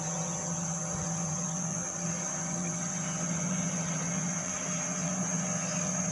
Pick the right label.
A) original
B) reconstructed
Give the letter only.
B